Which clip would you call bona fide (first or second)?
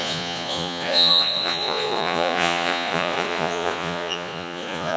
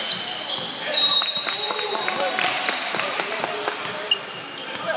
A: second